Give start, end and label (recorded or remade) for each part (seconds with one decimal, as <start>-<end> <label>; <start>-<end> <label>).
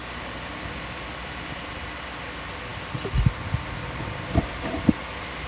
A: 0.0-5.5 recorded